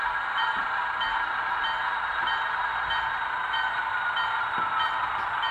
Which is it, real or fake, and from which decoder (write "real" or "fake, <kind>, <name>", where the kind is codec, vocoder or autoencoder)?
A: real